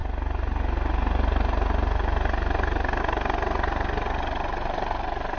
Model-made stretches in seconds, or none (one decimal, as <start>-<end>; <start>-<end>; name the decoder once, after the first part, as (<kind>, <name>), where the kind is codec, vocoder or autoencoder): none